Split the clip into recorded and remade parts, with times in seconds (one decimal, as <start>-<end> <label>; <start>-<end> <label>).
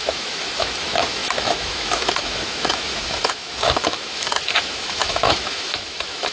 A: 0.0-6.3 remade